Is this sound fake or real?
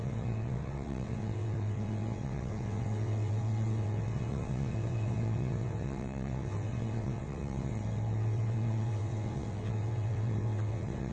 fake